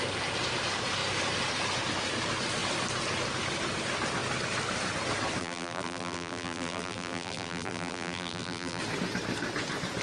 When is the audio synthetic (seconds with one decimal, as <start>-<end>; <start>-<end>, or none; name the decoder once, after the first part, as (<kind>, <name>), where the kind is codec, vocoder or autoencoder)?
5.4-8.8 (vocoder, BigVGAN v2)